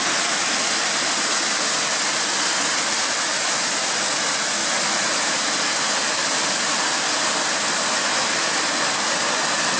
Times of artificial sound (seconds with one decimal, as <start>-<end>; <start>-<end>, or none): none